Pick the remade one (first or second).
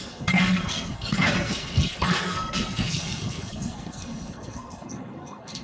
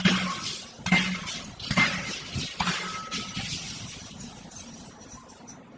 first